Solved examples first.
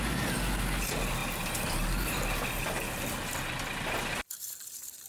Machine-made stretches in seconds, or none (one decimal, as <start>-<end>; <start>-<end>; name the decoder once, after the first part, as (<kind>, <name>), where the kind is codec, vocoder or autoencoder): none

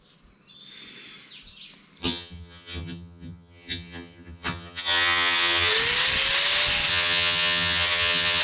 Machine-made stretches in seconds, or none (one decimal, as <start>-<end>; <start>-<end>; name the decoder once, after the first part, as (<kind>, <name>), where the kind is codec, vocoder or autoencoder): 2.0-5.7 (vocoder, HiFi-GAN); 6.9-8.4

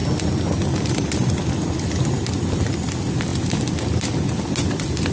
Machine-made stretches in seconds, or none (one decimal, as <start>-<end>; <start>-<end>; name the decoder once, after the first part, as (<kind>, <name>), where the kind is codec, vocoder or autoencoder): none

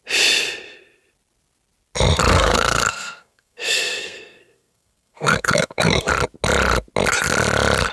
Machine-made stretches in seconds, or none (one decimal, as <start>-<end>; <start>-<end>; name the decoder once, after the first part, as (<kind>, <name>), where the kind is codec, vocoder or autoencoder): 2.3-6.1 (codec, SNAC)

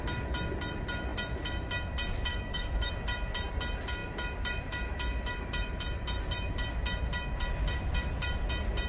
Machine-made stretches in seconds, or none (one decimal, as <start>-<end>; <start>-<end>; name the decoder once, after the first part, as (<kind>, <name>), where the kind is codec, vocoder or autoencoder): 2.3-2.9 (autoencoder, DAC-VAE)

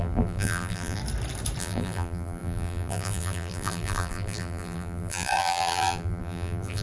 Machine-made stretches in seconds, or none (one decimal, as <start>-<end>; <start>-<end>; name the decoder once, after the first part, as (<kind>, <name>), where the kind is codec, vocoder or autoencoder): 0.0-1.0 (vocoder, BigVGAN v2); 1.6-6.8